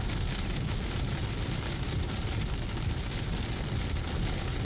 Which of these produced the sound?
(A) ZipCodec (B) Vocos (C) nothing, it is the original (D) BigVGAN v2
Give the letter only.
C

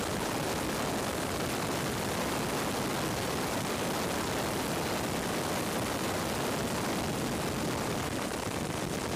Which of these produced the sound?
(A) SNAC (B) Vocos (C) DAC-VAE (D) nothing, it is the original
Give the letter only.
D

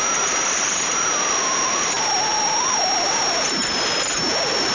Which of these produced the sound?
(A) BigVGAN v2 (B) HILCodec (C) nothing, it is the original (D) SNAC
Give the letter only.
A